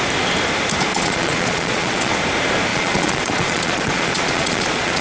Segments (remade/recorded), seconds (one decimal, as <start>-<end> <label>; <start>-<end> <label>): 0.0-0.9 recorded; 0.9-2.1 remade; 2.1-2.7 recorded; 2.7-5.0 remade